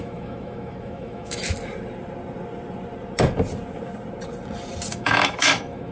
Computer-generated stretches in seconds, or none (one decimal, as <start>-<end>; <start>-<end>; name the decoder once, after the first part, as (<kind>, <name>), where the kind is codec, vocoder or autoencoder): 0.0-1.4 (autoencoder, DAC-VAE); 4.9-5.9